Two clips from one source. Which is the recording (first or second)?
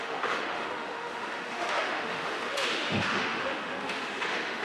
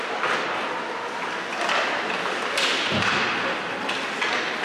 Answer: second